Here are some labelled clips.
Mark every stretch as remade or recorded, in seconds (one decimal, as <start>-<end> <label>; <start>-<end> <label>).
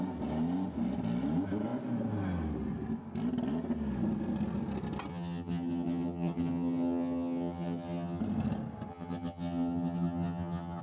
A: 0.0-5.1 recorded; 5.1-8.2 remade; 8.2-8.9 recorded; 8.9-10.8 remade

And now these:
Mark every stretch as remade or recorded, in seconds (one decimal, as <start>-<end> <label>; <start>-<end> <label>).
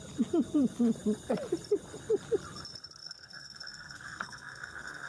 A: 0.0-3.0 recorded; 3.0-5.1 remade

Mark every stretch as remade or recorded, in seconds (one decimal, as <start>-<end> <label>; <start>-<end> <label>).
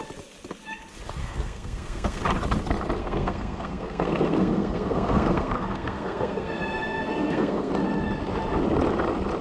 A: 0.0-1.2 recorded; 1.2-2.2 remade; 2.2-3.0 recorded; 3.0-7.7 remade; 7.7-9.4 recorded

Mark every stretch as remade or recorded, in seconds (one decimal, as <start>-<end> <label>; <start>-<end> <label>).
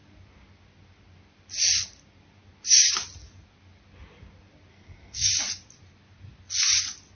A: 0.0-4.7 recorded; 4.7-5.3 remade; 5.3-7.2 recorded